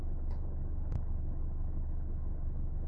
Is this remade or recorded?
remade